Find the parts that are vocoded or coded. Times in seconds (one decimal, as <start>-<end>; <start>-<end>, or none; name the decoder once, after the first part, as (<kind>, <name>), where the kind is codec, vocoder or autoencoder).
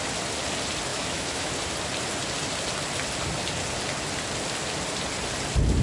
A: 0.9-1.5 (autoencoder, DAC-VAE)